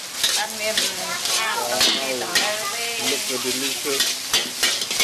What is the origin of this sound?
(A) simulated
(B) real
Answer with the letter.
B